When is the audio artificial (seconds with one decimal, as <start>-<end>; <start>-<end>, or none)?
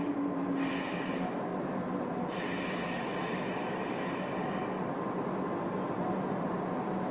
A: none